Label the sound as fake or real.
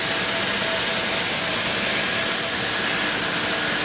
real